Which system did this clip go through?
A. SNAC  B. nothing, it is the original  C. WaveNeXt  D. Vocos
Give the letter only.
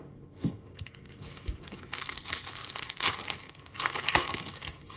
A